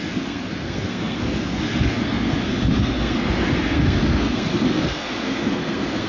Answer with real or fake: fake